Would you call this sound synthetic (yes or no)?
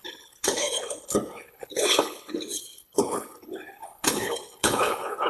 yes